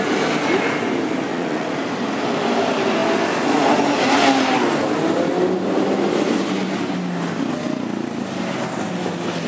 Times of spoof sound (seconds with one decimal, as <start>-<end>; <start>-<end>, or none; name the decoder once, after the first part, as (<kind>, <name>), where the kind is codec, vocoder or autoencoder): 1.3-1.8 (vocoder, Vocos)